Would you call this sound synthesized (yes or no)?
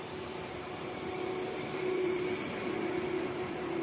yes